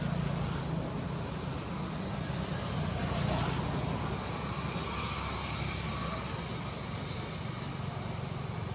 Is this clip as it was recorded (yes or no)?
yes